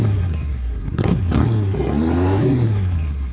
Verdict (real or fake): fake